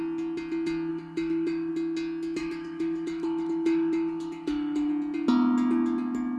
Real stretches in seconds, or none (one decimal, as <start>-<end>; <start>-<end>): 0.0-0.9; 1.7-2.4; 4.9-6.4